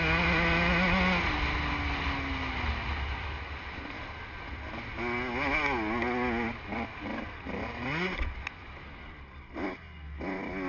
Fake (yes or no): no